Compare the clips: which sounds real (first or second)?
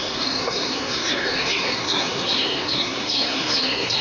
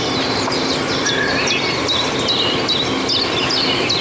second